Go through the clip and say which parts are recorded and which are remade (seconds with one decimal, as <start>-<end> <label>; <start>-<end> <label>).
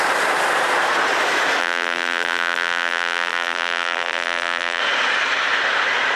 0.0-1.6 recorded; 1.6-4.8 remade; 4.8-6.2 recorded